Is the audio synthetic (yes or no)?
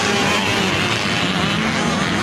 no